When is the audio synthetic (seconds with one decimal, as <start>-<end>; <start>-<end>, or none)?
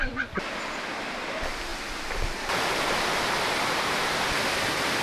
none